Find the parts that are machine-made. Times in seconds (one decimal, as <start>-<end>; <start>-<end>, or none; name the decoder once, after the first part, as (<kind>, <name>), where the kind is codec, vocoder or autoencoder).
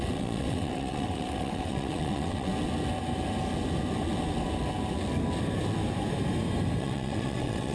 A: 0.0-2.5 (vocoder, WaveNeXt); 6.8-7.7